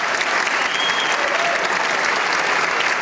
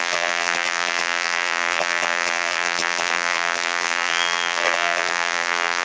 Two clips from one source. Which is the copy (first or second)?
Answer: second